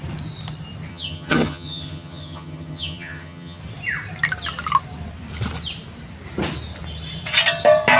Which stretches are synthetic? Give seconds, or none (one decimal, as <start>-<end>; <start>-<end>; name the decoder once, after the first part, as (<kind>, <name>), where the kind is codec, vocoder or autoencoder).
0.9-3.6 (vocoder, HiFi-GAN)